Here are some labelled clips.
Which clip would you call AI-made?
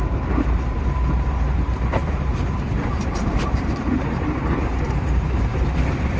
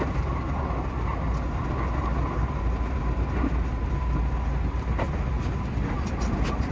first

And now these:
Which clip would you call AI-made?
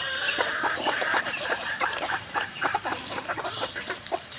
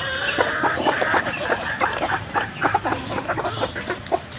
first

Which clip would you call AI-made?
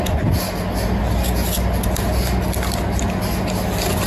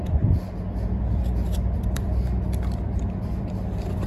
second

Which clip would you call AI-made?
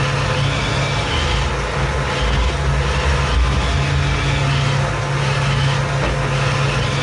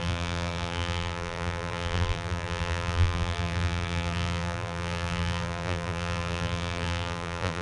second